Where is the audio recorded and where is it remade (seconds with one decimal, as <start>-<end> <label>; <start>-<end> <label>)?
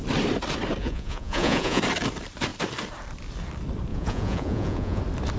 0.0-0.8 recorded; 0.8-1.8 remade; 1.8-3.9 recorded; 3.9-5.0 remade; 5.0-5.4 recorded